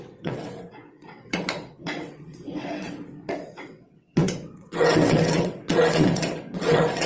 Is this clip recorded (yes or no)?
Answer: no